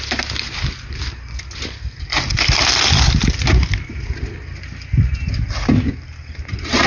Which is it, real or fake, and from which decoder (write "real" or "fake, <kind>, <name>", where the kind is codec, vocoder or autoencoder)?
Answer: real